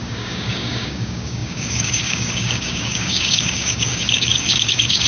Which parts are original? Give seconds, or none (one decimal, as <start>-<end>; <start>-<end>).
none